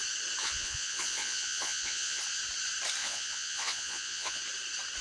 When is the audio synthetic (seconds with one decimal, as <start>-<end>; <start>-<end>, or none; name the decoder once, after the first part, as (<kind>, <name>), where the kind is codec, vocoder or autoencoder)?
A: 0.4-2.2 (vocoder, Vocos); 3.0-4.4